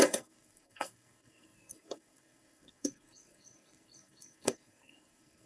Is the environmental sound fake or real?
fake